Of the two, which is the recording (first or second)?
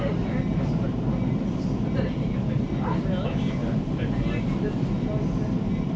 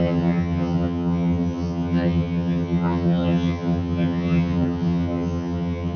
first